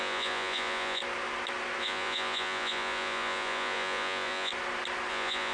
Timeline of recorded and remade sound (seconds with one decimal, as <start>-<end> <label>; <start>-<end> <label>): 0.0-1.0 remade; 1.0-1.8 recorded; 1.8-4.5 remade; 4.5-5.1 recorded; 5.1-5.5 remade